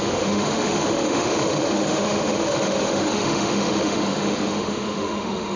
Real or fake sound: fake